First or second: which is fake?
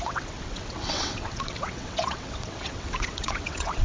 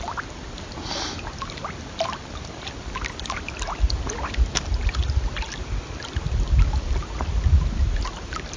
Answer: first